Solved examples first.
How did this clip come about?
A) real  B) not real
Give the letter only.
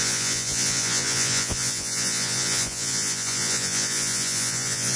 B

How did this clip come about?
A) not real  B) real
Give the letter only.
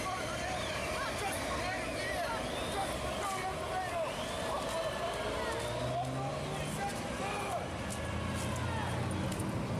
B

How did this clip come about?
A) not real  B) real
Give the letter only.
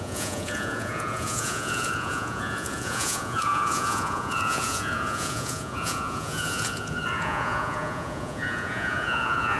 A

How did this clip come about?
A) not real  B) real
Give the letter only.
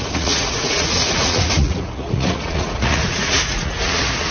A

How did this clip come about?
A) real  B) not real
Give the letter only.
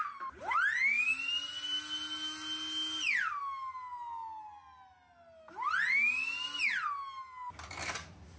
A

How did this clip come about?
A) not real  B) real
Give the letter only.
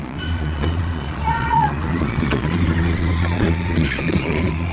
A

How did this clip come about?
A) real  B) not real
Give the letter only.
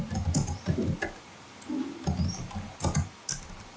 A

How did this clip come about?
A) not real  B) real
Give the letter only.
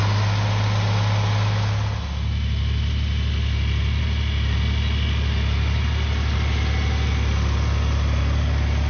B